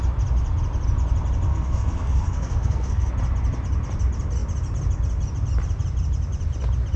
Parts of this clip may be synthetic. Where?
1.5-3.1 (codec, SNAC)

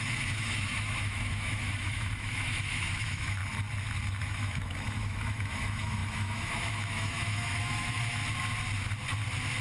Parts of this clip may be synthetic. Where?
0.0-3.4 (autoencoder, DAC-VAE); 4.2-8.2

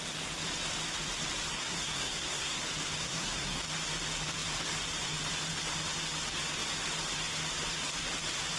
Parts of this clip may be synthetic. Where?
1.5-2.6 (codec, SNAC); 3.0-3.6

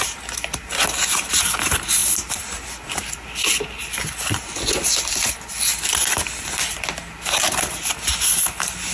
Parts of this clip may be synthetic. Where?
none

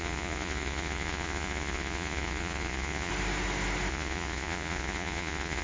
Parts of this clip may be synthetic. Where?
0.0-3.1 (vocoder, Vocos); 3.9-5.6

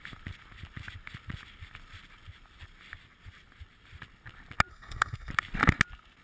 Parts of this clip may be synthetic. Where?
4.7-5.3 (codec, SNAC)